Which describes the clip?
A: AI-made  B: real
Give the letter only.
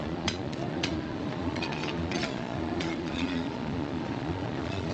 A